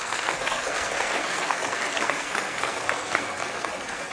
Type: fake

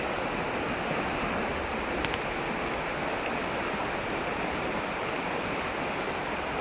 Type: real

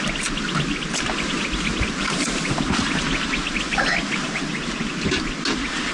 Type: real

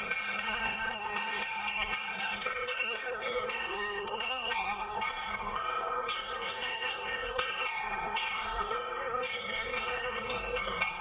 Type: fake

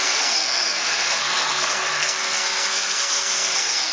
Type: fake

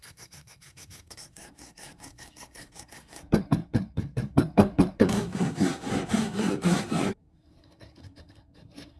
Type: fake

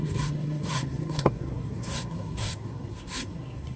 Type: fake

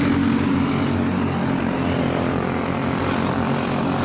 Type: real